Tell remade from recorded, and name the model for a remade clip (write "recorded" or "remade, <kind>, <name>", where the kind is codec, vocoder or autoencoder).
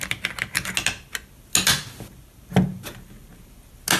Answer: recorded